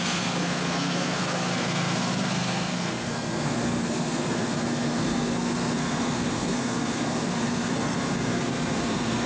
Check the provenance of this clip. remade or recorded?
remade